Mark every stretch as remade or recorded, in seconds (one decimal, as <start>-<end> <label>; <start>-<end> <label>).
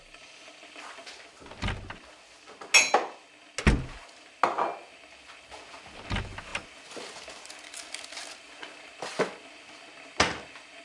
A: 0.0-10.8 recorded